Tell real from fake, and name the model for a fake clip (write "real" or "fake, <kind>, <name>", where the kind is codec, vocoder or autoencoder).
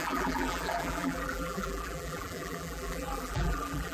fake, vocoder, BigVGAN v2